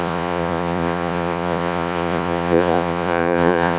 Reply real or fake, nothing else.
fake